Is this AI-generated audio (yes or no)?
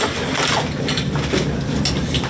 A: no